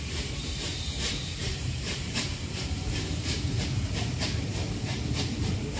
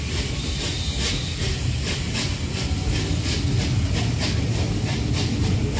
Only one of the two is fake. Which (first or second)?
first